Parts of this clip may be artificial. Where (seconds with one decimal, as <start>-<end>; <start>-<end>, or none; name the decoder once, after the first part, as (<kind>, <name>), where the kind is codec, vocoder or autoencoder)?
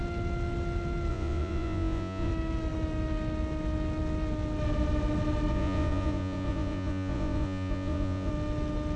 1.1-2.3 (vocoder, Vocos); 5.5-8.3